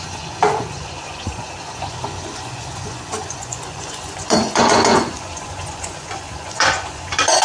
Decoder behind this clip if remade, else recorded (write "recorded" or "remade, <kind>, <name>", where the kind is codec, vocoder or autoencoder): remade, vocoder, Vocos